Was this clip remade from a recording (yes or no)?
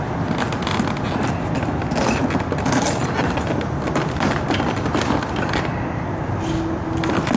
no